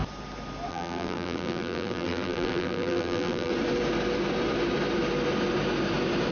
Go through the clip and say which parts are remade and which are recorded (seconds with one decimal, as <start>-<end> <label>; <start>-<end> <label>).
0.0-0.7 recorded; 0.7-3.5 remade; 3.5-6.3 recorded